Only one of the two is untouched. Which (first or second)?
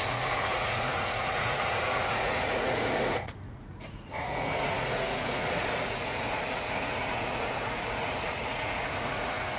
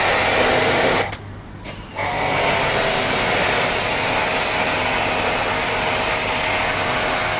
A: second